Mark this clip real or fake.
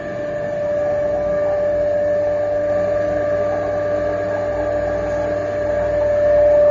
real